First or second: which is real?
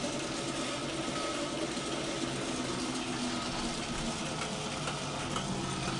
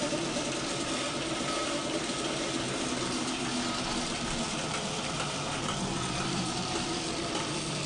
first